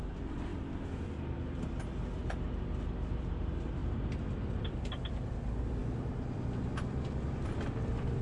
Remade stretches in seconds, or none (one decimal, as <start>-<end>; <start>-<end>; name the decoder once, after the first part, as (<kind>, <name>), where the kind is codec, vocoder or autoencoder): 0.0-2.2 (vocoder, BigVGAN v2); 2.9-3.8; 4.3-5.8; 6.6-8.2